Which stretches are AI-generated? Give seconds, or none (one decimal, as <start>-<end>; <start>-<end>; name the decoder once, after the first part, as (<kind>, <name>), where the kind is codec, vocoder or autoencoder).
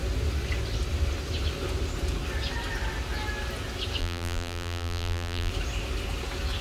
4.0-5.5 (vocoder, BigVGAN v2)